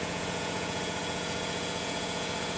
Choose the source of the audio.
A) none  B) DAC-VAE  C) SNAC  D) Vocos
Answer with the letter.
D